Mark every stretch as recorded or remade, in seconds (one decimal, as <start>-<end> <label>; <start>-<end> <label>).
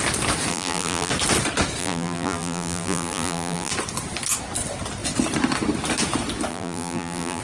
0.0-0.5 recorded; 0.5-1.1 remade; 1.1-1.8 recorded; 1.8-3.7 remade; 3.7-6.5 recorded; 6.5-7.4 remade